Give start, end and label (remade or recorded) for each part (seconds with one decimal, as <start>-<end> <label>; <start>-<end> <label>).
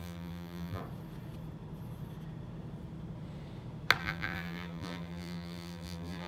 0.0-0.8 remade; 0.8-4.0 recorded; 4.0-6.3 remade